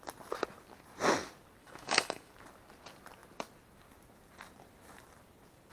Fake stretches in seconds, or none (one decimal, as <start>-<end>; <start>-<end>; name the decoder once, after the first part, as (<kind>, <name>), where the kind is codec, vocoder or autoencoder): 1.6-2.3 (autoencoder, DAC-VAE)